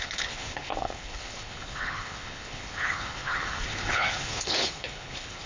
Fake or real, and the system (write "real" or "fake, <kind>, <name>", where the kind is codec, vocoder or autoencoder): fake, codec, HILCodec